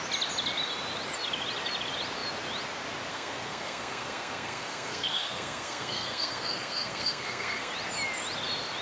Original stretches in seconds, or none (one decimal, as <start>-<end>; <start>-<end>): 0.0-3.1; 7.7-8.8